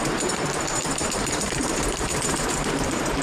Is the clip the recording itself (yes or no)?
no